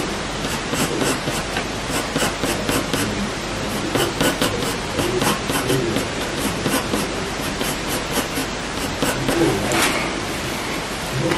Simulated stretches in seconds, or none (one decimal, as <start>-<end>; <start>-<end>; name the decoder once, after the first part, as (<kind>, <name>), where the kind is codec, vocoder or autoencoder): 0.0-1.3 (vocoder, BigVGAN v2); 2.9-8.4; 11.0-11.4